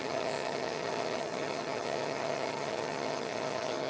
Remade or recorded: remade